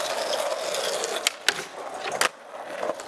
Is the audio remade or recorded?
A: recorded